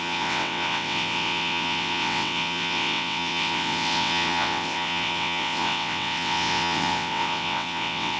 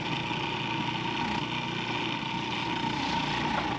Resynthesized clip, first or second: first